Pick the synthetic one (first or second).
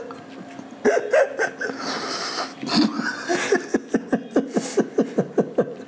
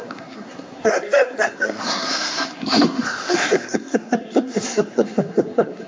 second